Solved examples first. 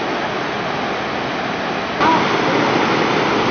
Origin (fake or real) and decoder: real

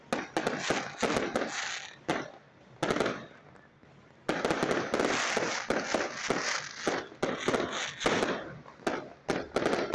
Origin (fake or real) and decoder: real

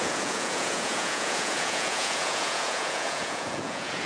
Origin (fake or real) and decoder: fake, vocoder, Vocos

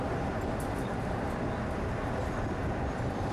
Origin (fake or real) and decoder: real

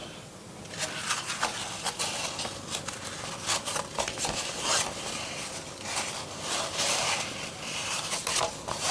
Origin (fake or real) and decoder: real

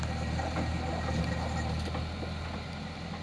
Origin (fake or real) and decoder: real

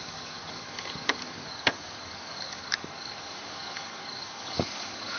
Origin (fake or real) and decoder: fake, codec, DAC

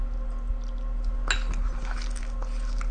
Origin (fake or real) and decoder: real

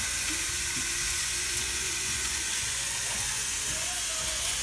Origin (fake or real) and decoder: fake, vocoder, Vocos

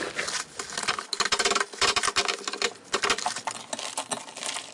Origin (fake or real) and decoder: real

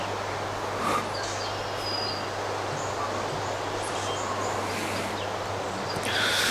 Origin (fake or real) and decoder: real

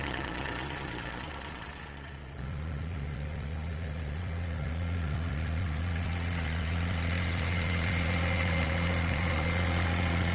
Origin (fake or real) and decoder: fake, vocoder, Vocos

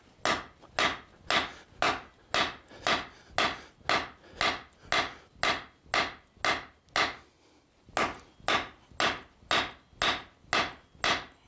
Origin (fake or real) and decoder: real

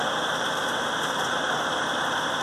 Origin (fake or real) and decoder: fake, vocoder, BigVGAN v2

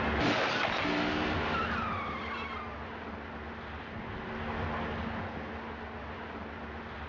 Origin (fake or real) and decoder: real